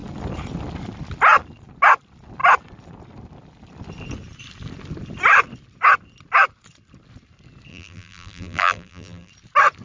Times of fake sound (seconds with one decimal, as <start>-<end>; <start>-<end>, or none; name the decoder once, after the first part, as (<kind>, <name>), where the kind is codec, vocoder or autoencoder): 7.7-9.3 (vocoder, BigVGAN v2)

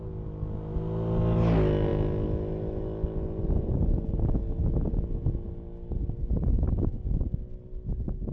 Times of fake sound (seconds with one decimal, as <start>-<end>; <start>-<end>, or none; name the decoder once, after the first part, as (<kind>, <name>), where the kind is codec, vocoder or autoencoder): none

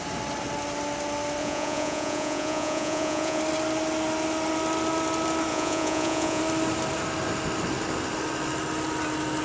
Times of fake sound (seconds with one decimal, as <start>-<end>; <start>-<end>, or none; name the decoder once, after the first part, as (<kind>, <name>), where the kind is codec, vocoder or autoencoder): 1.4-3.4 (vocoder, Vocos); 5.5-6.4